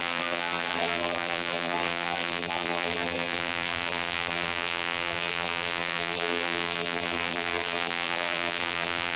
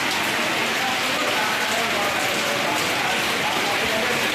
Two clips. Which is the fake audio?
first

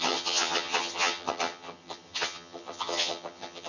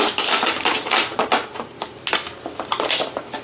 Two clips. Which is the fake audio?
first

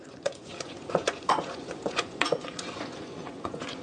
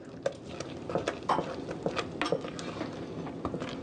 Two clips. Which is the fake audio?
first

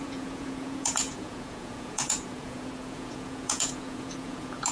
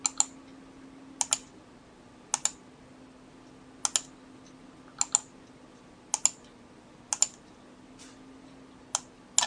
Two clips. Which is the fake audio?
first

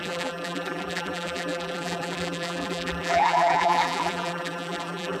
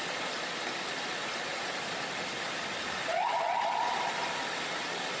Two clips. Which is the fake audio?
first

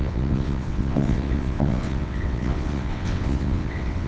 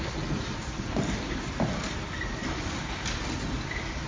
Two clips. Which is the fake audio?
first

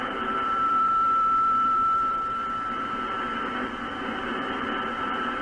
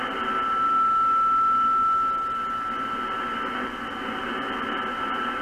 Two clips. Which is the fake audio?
first